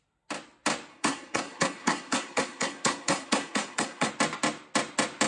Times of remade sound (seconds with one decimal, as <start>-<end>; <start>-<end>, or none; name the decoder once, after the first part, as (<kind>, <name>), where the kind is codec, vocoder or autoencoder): 0.9-4.1 (codec, SNAC)